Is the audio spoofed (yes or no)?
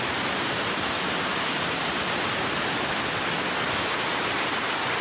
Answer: no